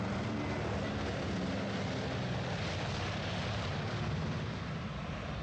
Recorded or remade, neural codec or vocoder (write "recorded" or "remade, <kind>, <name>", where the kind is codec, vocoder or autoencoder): recorded